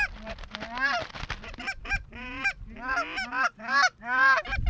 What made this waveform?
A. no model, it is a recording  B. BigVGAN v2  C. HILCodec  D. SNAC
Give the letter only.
A